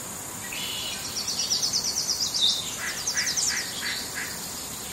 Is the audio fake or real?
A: real